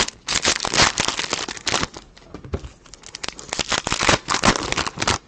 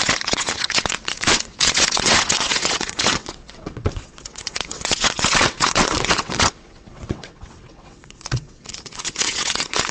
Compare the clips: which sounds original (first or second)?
first